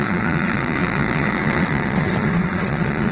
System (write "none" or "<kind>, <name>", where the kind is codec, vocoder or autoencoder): vocoder, Vocos